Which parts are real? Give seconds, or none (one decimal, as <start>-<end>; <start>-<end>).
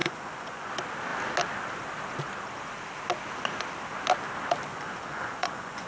0.7-4.7